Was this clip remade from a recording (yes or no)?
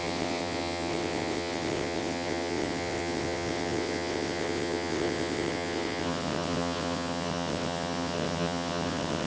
yes